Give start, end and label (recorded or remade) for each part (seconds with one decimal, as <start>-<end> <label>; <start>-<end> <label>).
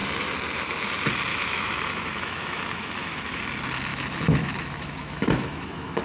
0.0-1.3 recorded; 1.3-3.4 remade; 3.4-3.9 recorded; 3.9-6.0 remade